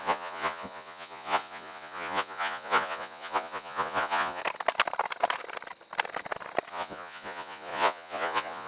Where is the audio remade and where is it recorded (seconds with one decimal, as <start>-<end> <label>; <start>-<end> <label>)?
0.0-4.4 remade; 4.4-6.7 recorded; 6.7-8.7 remade